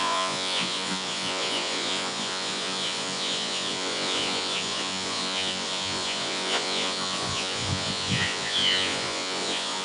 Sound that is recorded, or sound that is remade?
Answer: remade